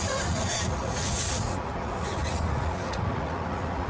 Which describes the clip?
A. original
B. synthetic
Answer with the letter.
B